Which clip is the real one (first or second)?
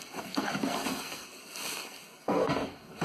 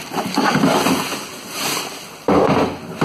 second